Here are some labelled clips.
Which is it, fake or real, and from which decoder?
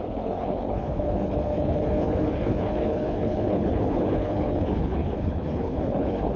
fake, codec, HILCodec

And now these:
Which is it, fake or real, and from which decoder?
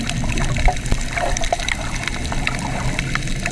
fake, vocoder, BigVGAN v2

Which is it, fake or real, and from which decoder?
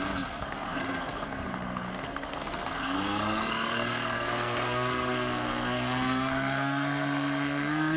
fake, codec, SNAC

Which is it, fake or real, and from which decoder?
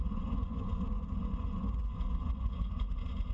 fake, vocoder, Vocos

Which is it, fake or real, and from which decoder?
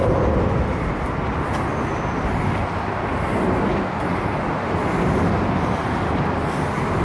real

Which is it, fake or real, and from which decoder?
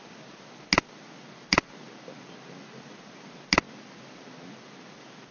real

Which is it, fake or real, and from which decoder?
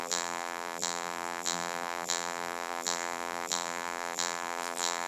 fake, vocoder, BigVGAN v2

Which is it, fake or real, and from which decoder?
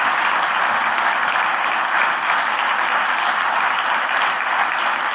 real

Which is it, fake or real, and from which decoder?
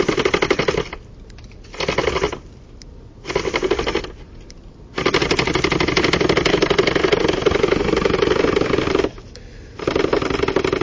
real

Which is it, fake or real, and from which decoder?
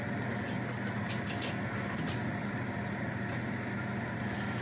real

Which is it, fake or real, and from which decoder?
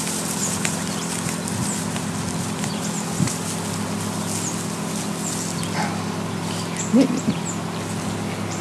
real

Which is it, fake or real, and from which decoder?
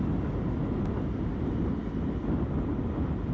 real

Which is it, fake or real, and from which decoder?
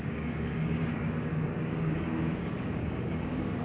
fake, codec, DAC